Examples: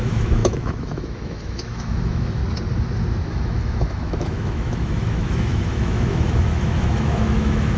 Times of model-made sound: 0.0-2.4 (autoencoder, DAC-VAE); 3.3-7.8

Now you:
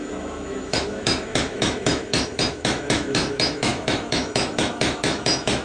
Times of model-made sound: 0.0-5.6 (autoencoder, DAC-VAE)

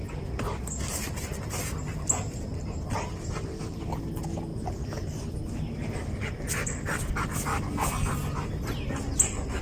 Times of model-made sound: none

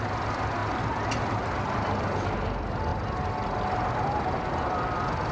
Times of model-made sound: none

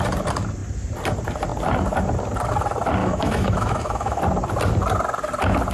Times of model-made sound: 3.0-4.2 (autoencoder, DAC-VAE)

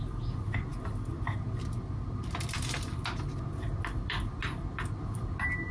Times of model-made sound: none

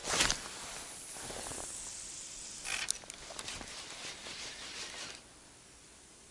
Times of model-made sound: none